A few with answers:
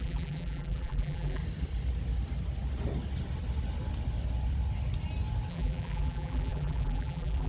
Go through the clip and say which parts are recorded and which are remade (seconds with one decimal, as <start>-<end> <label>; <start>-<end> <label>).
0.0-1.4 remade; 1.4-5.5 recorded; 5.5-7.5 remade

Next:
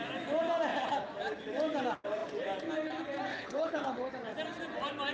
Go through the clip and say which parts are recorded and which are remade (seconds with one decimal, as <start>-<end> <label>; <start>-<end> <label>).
0.0-3.3 recorded; 3.3-4.1 remade; 4.1-5.1 recorded

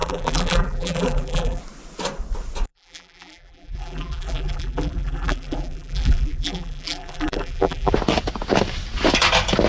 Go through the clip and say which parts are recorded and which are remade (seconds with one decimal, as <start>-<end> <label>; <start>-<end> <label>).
0.0-1.6 remade; 1.6-2.7 recorded; 2.7-7.9 remade; 7.9-9.7 recorded

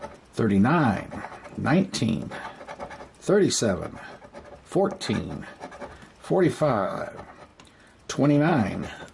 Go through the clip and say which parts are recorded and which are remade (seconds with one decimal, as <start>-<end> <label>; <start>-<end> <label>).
0.0-6.5 recorded; 6.5-7.0 remade; 7.0-9.1 recorded

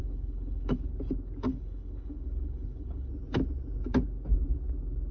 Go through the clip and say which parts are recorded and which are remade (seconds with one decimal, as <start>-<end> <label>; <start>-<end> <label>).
0.0-0.9 remade; 0.9-1.5 recorded; 1.5-3.1 remade; 3.1-5.1 recorded